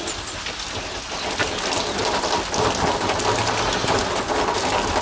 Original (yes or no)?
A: yes